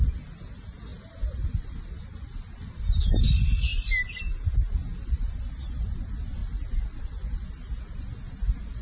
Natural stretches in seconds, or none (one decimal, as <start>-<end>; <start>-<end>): 0.0-0.9; 2.7-4.8; 5.4-6.4; 7.8-8.8